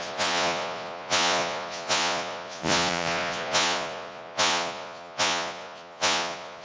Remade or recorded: remade